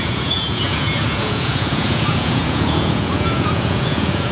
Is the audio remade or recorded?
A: remade